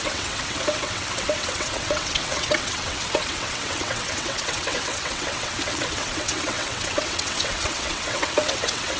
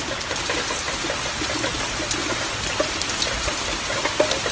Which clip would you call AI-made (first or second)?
first